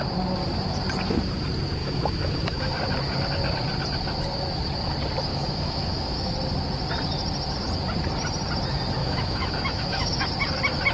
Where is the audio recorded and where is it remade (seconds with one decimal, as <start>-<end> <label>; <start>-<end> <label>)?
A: 0.0-1.8 recorded; 1.8-2.7 remade; 2.7-5.3 recorded; 5.3-6.3 remade; 6.3-9.0 recorded; 9.0-10.3 remade; 10.3-10.9 recorded